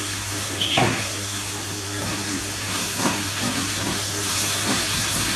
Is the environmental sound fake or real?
fake